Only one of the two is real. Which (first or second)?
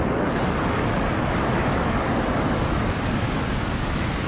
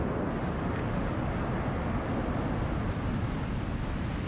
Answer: second